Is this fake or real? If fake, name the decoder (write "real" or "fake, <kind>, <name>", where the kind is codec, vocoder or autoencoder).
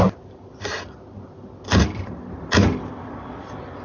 real